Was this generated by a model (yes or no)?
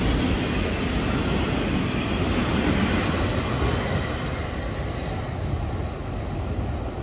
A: no